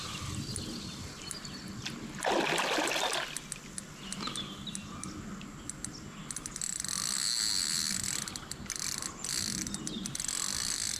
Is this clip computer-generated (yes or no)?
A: no